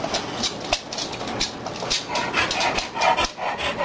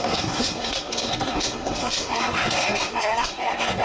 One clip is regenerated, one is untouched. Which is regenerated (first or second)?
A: second